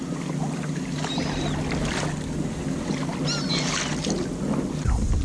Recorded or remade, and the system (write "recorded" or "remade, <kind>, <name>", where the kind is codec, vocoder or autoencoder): recorded